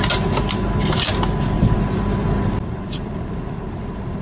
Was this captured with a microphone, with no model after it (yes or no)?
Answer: yes